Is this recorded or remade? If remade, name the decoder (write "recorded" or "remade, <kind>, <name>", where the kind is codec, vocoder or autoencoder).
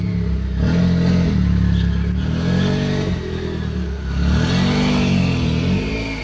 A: recorded